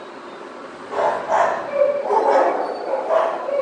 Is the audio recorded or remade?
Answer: recorded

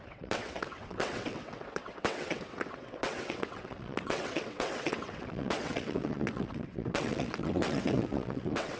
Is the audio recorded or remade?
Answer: remade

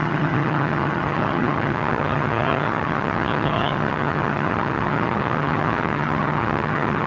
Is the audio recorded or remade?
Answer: remade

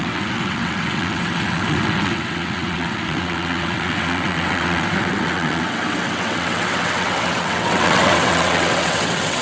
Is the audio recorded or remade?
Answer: remade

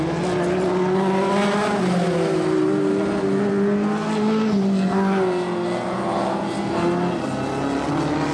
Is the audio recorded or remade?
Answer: recorded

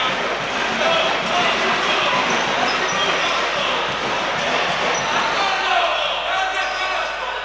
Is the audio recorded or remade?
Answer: recorded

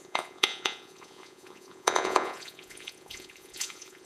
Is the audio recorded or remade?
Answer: remade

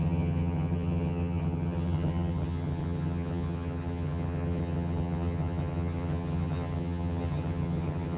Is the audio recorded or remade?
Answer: remade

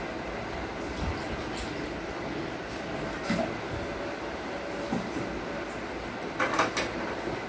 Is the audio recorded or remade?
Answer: recorded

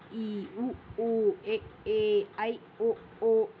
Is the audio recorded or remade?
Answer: recorded